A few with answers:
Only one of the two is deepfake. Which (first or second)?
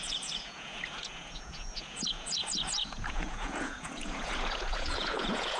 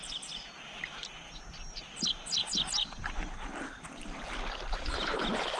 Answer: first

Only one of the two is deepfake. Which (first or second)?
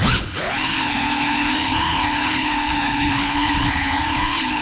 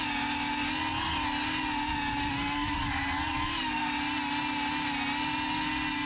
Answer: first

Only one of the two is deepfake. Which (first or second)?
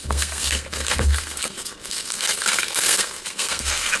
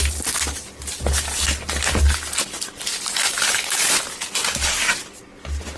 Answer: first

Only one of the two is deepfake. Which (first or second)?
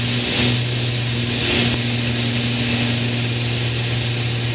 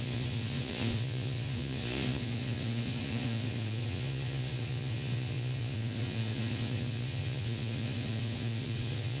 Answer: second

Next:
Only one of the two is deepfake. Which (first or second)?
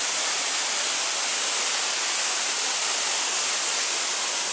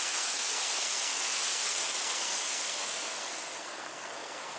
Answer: second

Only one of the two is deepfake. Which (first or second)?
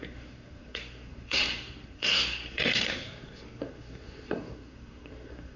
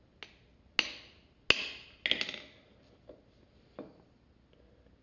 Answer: first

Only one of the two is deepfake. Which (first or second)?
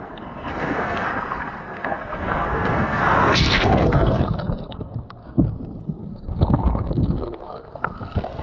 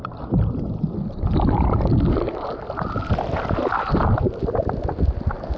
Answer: first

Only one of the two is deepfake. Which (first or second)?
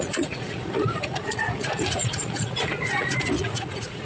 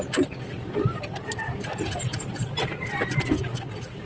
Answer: first